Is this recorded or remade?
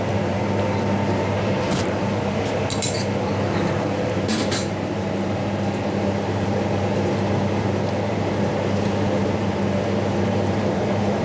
remade